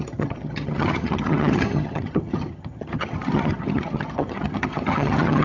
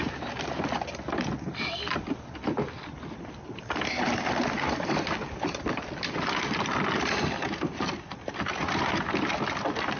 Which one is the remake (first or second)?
first